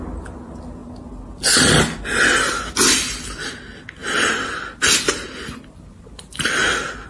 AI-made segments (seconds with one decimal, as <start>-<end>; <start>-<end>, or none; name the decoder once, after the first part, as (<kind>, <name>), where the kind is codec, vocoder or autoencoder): none